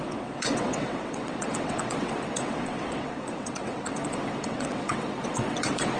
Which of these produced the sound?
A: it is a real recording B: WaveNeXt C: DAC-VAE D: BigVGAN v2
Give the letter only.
B